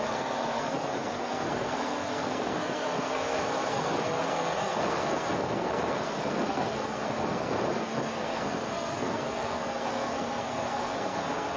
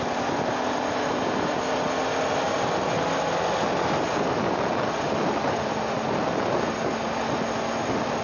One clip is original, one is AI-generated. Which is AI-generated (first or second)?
first